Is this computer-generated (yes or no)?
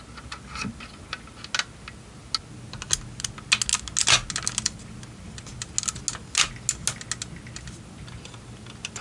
no